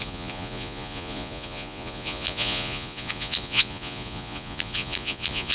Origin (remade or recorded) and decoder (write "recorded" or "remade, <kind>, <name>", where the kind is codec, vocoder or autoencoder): remade, vocoder, Vocos